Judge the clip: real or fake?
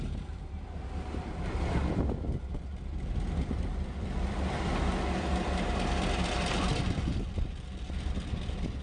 fake